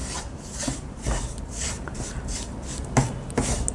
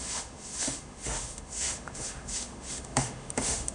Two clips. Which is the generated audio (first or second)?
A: second